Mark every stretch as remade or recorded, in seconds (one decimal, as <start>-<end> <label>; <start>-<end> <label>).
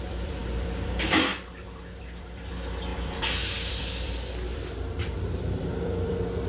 0.0-6.5 remade